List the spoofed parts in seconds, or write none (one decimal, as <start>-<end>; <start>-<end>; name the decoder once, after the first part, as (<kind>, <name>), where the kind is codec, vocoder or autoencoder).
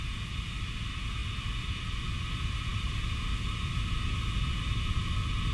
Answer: none